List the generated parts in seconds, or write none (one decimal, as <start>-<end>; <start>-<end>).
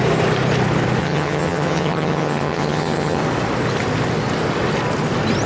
1.0-3.2